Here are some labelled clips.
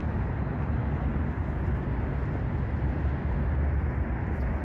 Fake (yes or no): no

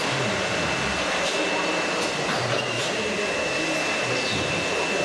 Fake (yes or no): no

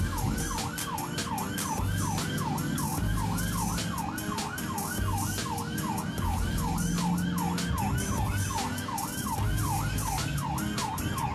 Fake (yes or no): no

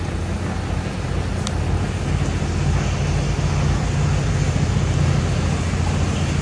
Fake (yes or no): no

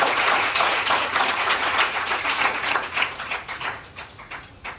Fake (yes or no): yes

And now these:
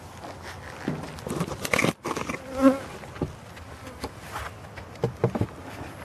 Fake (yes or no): no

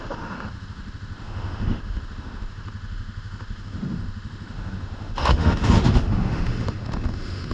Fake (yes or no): yes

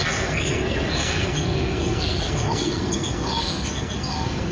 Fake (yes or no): yes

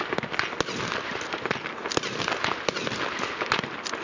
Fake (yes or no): no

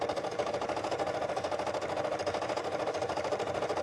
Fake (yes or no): no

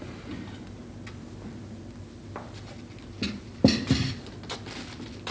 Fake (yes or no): no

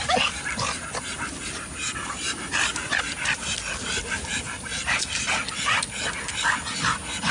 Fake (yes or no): no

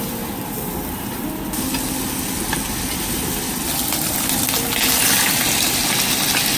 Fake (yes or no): no